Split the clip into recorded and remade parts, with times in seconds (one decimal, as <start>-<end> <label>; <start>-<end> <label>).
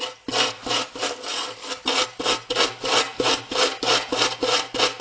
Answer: 0.0-5.0 recorded